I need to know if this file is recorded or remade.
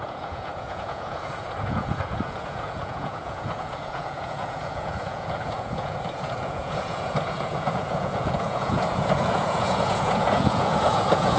remade